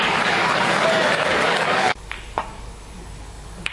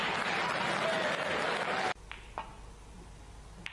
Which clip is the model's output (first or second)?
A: first